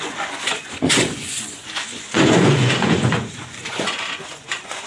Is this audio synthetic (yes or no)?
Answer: yes